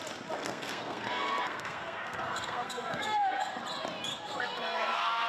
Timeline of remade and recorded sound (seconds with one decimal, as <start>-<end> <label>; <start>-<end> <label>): 0.0-0.4 recorded; 0.4-3.6 remade; 3.6-4.1 recorded; 4.1-5.3 remade